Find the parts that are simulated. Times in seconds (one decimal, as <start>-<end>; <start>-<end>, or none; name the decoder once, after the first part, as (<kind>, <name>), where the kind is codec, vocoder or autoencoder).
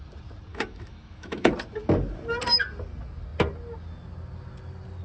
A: 0.5-1.5 (autoencoder, DAC-VAE)